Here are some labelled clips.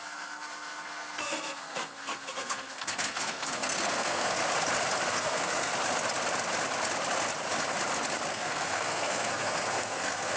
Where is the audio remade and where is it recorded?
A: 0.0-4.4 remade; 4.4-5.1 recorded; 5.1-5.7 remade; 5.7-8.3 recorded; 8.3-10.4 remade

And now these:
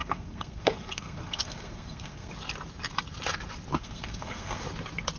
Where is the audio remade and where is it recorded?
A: 0.0-2.3 remade; 2.3-3.7 recorded; 3.7-4.6 remade; 4.6-5.2 recorded